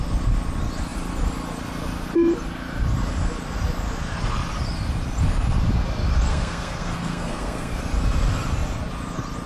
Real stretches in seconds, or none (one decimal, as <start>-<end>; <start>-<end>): 0.0-6.3; 7.8-9.5